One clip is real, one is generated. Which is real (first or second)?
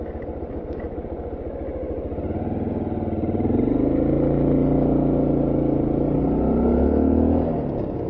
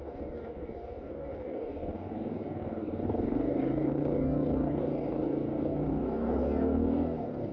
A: first